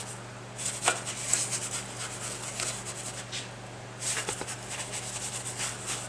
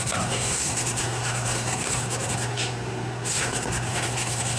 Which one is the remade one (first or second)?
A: second